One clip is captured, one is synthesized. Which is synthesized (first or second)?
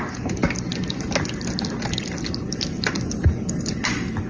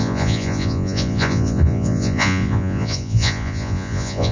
second